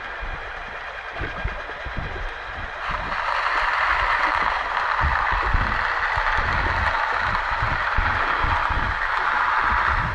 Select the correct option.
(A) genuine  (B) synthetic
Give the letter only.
A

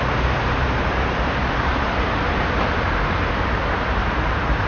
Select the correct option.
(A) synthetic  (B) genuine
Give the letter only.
A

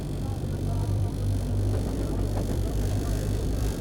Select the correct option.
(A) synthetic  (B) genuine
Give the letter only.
A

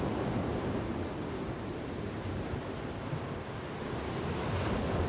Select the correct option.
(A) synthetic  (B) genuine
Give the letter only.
B